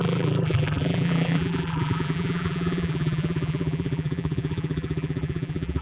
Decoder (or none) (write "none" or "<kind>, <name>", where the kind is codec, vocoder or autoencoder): vocoder, BigVGAN v2